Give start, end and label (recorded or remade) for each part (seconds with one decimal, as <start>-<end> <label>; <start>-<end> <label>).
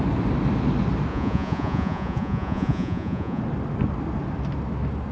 0.0-1.1 recorded; 1.1-3.4 remade; 3.4-5.1 recorded